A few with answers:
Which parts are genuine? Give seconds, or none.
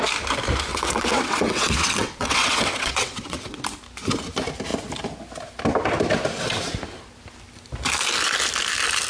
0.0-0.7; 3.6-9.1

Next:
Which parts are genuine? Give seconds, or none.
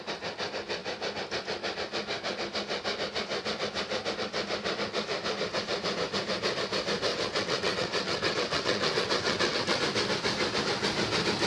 0.0-7.1; 9.8-11.5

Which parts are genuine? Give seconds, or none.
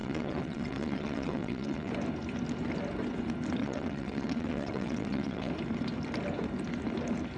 1.9-3.6; 5.5-7.4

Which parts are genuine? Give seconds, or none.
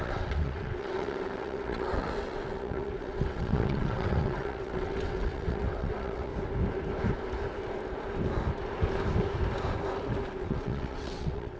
6.3-10.4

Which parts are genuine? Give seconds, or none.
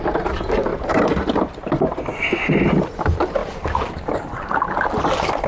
0.0-5.5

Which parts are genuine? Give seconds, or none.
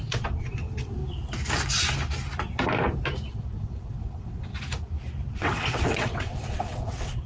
1.0-3.3; 4.5-5.3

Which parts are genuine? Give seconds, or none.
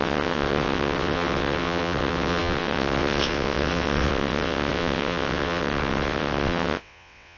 none